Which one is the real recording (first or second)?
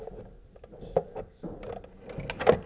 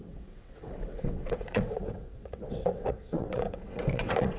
first